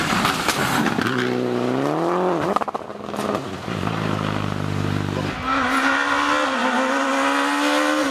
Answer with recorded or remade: recorded